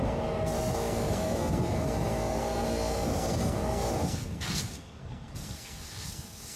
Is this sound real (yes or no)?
no